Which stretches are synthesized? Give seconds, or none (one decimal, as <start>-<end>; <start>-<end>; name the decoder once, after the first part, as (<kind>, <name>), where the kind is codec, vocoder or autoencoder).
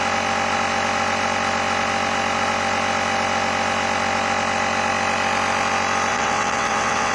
6.1-7.1 (vocoder, WaveNeXt)